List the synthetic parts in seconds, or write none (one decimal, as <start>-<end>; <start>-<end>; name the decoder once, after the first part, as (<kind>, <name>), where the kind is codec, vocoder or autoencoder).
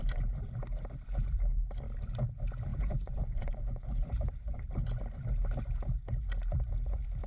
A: 2.7-4.7 (vocoder, Vocos)